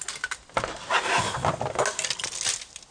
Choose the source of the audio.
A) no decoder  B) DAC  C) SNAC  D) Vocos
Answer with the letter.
A